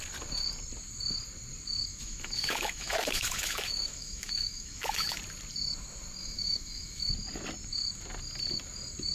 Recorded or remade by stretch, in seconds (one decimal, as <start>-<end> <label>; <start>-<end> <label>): 0.0-1.9 recorded; 1.9-5.2 remade; 5.2-6.2 recorded; 6.2-7.1 remade; 7.1-9.1 recorded